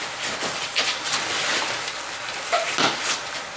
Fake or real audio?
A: real